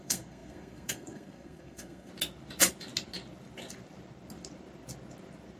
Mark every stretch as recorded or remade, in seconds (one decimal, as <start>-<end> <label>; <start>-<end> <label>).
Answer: 0.0-2.1 remade; 2.1-5.6 recorded

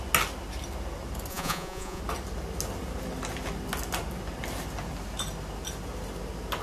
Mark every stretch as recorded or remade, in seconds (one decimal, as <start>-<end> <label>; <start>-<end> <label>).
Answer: 0.0-1.3 recorded; 1.3-2.0 remade; 2.0-6.6 recorded

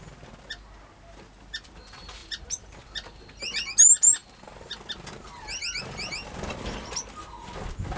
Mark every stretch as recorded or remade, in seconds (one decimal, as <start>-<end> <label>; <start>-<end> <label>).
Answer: 0.0-8.0 recorded

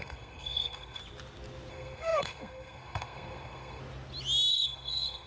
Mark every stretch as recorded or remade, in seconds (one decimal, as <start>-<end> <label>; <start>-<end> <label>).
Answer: 0.0-1.0 remade; 1.0-1.7 recorded; 1.7-3.8 remade; 3.8-4.5 recorded; 4.5-5.3 remade

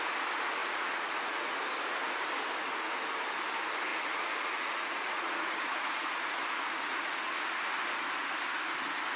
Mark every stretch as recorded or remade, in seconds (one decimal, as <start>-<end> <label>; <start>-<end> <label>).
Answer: 0.0-0.6 recorded; 0.6-1.5 remade; 1.5-3.9 recorded; 3.9-7.3 remade; 7.3-9.2 recorded

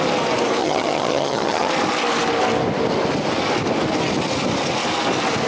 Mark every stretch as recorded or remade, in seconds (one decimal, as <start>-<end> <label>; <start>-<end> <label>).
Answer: 0.0-0.6 recorded; 0.6-1.7 remade; 1.7-5.5 recorded

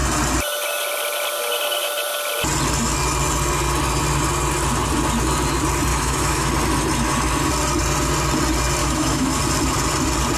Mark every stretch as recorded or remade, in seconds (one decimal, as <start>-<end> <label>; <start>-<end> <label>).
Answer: 0.0-5.9 recorded; 5.9-6.5 remade; 6.5-8.8 recorded; 8.8-9.4 remade; 9.4-10.4 recorded

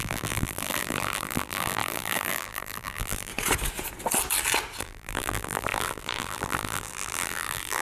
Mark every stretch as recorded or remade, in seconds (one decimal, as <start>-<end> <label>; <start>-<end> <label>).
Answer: 0.0-3.3 remade; 3.3-4.8 recorded; 4.8-7.8 remade